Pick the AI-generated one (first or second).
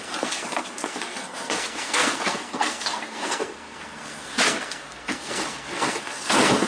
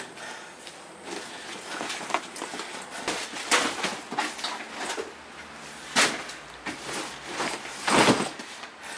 first